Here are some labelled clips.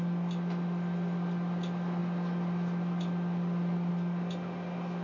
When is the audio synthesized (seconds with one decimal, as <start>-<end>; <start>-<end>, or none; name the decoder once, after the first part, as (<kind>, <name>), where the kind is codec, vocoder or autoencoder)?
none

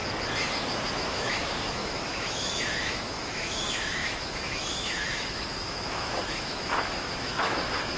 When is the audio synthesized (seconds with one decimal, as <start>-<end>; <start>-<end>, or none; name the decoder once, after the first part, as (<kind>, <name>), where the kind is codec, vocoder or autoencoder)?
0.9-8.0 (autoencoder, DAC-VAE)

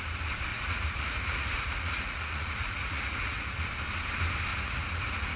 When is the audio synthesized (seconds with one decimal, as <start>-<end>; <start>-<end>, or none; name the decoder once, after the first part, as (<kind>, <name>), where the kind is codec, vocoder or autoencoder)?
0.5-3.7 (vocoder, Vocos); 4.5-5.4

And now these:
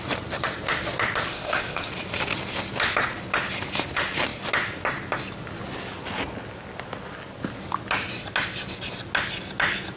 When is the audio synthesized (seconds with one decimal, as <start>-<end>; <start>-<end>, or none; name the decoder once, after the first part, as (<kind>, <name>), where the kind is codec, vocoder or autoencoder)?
1.3-1.9 (codec, ZipCodec)

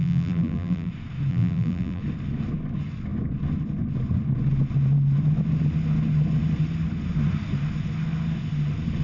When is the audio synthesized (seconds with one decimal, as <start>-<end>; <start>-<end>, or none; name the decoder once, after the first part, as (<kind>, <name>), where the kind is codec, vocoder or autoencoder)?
0.0-0.9 (vocoder, BigVGAN v2); 1.3-2.0

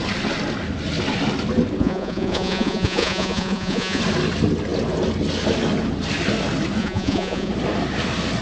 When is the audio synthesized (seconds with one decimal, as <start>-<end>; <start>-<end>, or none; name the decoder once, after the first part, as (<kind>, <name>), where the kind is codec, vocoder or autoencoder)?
1.8-4.0 (vocoder, Vocos); 6.8-7.5

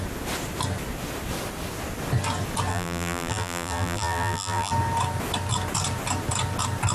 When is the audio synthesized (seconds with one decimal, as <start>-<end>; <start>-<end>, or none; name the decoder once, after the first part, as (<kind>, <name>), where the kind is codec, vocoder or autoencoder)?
2.7-4.7 (vocoder, BigVGAN v2)

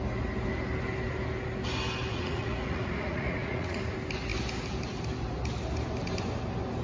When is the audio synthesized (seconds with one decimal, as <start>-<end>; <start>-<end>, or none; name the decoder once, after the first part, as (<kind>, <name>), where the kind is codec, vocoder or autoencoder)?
2.1-3.8 (vocoder, Vocos)